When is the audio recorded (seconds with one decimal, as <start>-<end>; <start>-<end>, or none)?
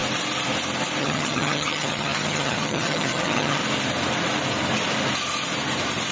0.0-1.0; 3.6-6.1